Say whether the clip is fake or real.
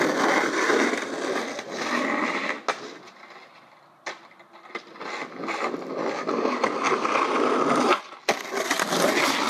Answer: real